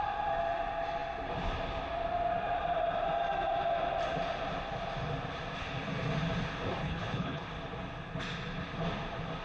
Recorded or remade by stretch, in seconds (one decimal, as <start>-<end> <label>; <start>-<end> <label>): 0.0-6.8 recorded; 6.8-7.4 remade; 7.4-9.4 recorded